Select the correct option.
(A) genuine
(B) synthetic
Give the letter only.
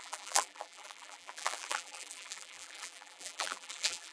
B